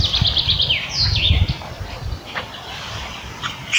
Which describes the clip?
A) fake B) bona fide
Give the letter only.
B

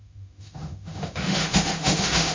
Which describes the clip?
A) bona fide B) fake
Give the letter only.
B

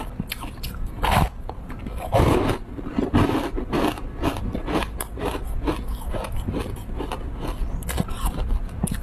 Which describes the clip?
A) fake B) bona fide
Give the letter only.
B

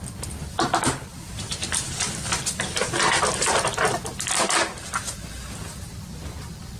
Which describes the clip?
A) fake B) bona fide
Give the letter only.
B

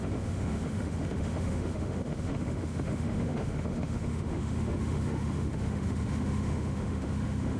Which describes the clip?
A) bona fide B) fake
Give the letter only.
B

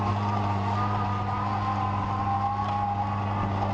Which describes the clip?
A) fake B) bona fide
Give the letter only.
B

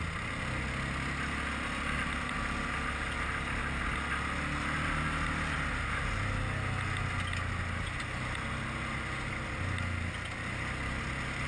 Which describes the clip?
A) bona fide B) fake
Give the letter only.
A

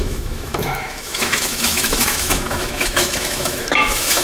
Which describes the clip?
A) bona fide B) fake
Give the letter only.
B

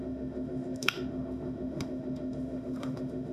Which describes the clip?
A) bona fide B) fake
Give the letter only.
B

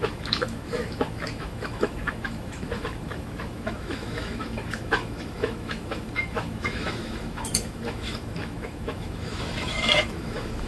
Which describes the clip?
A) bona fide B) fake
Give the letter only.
B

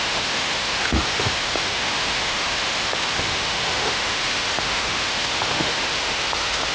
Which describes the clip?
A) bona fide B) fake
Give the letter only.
B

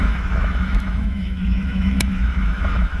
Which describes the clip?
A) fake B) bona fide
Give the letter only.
A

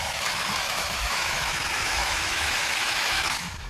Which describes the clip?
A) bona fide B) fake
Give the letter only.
B